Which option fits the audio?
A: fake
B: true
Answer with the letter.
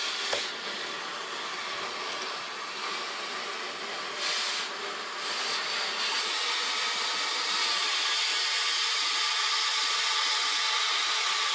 B